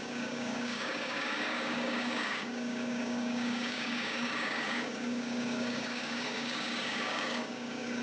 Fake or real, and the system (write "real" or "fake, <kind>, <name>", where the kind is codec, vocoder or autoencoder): fake, codec, DAC